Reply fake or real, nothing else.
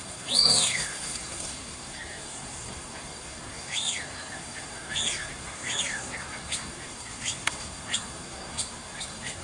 fake